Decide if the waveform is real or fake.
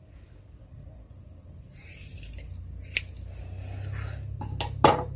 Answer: real